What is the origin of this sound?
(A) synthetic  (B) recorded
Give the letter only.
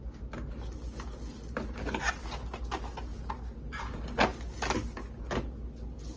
B